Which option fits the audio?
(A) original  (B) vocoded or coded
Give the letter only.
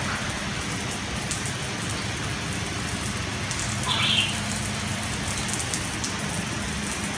A